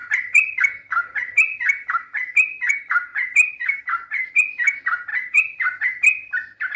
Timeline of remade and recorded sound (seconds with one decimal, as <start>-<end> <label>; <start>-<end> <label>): 0.0-0.6 remade; 0.6-3.1 recorded; 3.1-4.3 remade; 4.3-5.1 recorded; 5.1-5.8 remade; 5.8-6.8 recorded